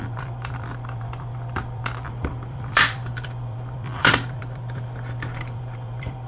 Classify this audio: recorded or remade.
remade